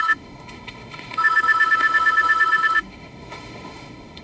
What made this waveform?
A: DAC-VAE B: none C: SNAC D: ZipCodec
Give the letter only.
A